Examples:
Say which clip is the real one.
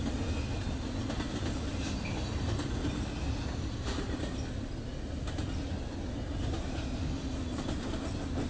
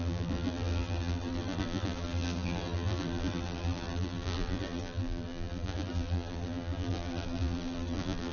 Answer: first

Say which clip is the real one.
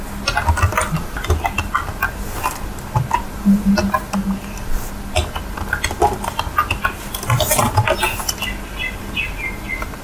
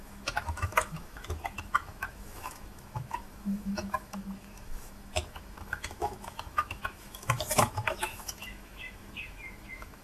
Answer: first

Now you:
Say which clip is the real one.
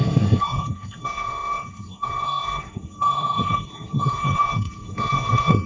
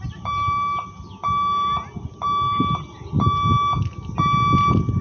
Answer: second